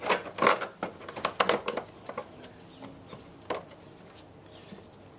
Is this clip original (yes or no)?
yes